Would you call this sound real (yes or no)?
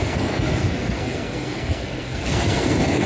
no